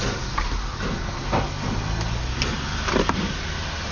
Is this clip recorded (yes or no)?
yes